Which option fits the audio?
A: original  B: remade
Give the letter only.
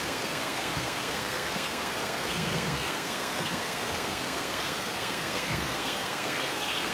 B